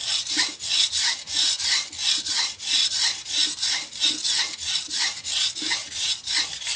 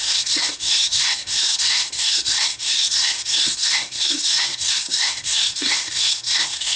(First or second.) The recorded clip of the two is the first